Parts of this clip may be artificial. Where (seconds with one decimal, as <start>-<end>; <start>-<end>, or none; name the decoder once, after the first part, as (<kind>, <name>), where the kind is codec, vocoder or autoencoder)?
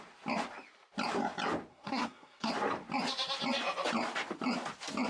1.7-2.5 (codec, SNAC)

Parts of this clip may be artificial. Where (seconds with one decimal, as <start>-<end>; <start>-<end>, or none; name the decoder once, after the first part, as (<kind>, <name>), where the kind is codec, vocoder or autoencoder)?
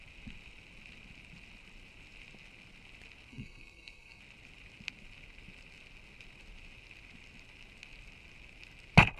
3.3-4.2 (codec, SNAC)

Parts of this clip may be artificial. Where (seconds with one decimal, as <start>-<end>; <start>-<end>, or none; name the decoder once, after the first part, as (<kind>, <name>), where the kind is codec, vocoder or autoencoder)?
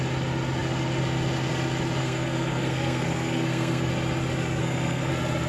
2.0-3.9 (codec, SNAC); 4.6-5.1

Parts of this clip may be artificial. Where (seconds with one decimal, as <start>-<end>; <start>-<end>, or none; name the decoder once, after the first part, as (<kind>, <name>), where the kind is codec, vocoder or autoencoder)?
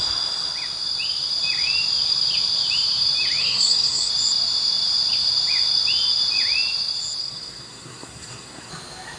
3.4-4.1 (codec, SNAC); 7.2-8.7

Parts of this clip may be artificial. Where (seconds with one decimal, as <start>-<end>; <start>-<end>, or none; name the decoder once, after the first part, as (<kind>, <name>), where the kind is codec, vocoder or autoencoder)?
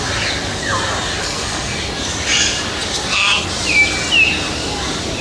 1.2-1.8 (codec, SNAC)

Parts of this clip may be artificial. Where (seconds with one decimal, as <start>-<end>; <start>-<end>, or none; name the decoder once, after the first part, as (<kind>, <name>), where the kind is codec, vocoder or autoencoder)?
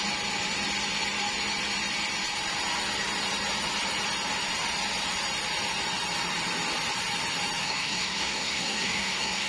7.6-9.5 (codec, SNAC)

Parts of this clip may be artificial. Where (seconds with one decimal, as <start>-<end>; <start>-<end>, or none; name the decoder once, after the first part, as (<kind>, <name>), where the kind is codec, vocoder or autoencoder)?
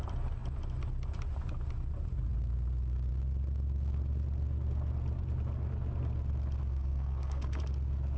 6.7-7.6 (codec, SNAC)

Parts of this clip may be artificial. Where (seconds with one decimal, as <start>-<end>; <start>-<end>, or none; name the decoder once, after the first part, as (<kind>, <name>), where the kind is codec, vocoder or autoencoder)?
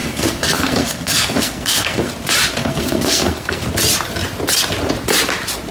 0.0-2.1 (codec, SNAC); 2.6-3.7